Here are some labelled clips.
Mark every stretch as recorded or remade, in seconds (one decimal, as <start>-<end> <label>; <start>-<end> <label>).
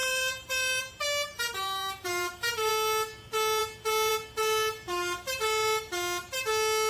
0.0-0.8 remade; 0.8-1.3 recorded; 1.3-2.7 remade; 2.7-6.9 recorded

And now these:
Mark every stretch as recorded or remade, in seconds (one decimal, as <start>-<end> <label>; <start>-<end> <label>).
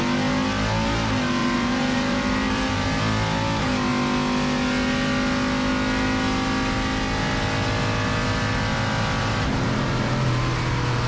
0.0-1.4 recorded; 1.4-3.0 remade; 3.0-9.2 recorded; 9.2-10.4 remade; 10.4-11.1 recorded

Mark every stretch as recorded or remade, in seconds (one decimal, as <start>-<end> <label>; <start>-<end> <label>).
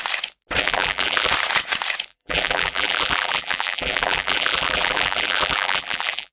0.0-0.6 recorded; 0.6-1.3 remade; 1.3-2.1 recorded; 2.1-6.3 remade